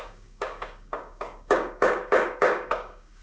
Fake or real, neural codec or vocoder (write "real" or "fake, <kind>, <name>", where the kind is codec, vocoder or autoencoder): fake, codec, DAC